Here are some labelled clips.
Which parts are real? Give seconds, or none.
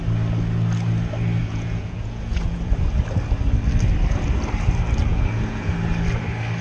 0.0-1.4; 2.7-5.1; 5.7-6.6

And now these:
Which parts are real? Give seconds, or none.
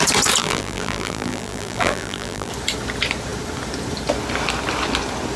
0.0-0.4; 2.5-5.4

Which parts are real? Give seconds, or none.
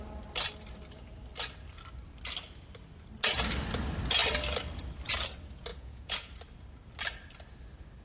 0.0-5.7; 6.3-8.0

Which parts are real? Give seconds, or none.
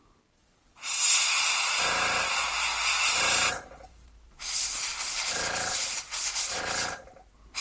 0.0-2.7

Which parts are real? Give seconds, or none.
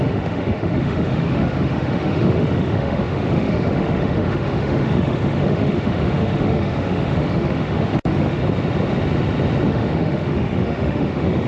8.4-9.7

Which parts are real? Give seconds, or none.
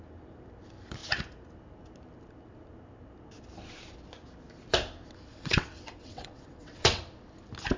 0.0-5.3; 7.0-7.8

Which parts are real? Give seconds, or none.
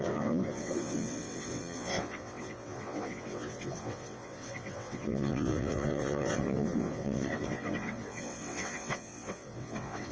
none